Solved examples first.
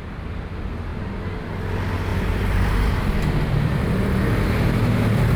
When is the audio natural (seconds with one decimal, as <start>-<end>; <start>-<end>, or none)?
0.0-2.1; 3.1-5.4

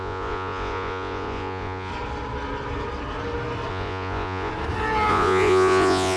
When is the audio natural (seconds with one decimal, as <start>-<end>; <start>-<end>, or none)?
1.9-3.7; 4.5-5.1

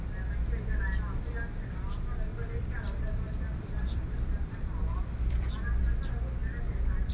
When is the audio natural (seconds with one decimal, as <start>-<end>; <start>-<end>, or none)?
0.0-2.3; 5.8-7.1